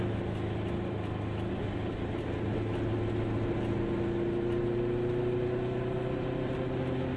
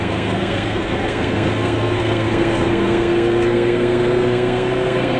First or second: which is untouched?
first